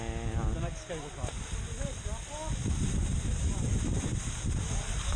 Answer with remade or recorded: recorded